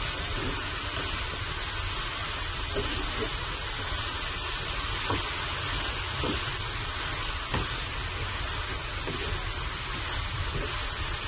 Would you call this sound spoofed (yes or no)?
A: no